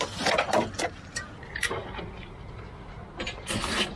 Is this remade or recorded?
recorded